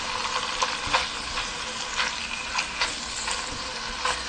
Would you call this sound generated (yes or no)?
no